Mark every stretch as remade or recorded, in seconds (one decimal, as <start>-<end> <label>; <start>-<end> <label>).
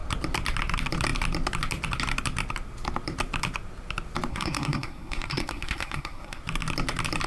0.0-4.3 recorded; 4.3-6.4 remade; 6.4-7.3 recorded